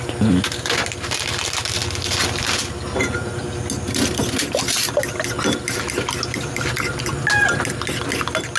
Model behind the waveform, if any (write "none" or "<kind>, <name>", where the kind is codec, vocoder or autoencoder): none